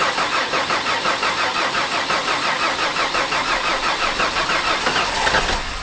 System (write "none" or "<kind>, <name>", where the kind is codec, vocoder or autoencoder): none